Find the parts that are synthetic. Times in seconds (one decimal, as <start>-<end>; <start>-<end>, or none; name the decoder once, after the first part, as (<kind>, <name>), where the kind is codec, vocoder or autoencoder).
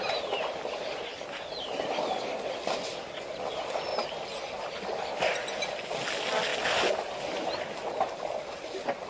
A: none